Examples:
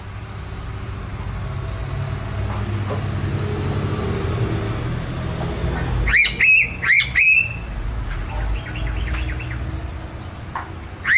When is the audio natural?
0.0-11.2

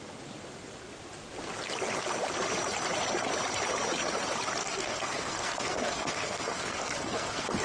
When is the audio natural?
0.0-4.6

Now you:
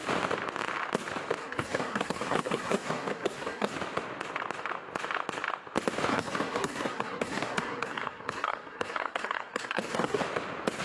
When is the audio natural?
0.0-1.4; 3.7-6.1; 10.2-10.8

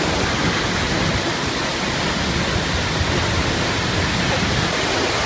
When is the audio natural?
0.0-5.3

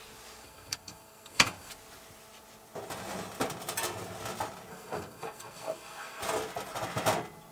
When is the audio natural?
0.0-0.4; 1.7-4.7; 6.2-7.5

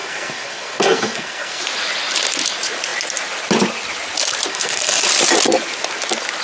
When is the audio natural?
1.6-4.5; 5.1-6.4